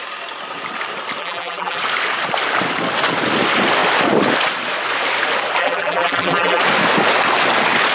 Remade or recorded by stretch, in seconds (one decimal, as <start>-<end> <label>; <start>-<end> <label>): 0.0-1.2 recorded; 1.2-1.8 remade; 1.8-5.6 recorded; 5.6-6.6 remade; 6.6-7.9 recorded